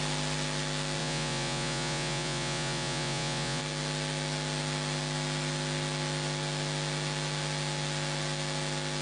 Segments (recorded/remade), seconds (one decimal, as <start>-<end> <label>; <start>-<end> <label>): 0.0-1.0 recorded; 1.0-3.6 remade; 3.6-9.0 recorded